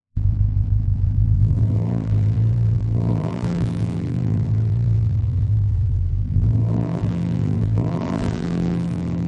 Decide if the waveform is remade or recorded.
remade